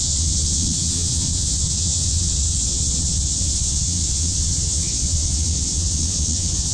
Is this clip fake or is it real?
fake